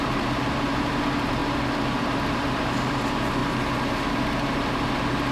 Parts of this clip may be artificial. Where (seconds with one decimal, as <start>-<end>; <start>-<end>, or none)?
0.0-1.4; 2.0-3.4; 4.1-5.3